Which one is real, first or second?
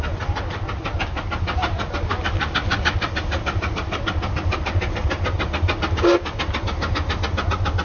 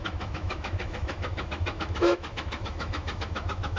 first